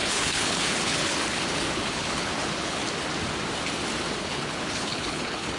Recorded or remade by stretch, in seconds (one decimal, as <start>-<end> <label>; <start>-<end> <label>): 0.0-2.8 remade; 2.8-4.2 recorded; 4.2-5.6 remade